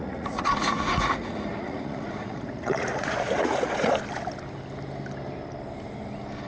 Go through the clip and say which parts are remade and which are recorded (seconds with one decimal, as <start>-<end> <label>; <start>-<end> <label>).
0.0-3.9 remade; 3.9-6.5 recorded